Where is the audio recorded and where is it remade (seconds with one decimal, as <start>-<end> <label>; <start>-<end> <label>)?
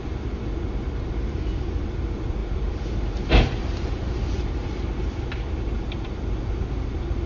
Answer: 0.0-2.4 recorded; 2.4-4.5 remade; 4.5-7.3 recorded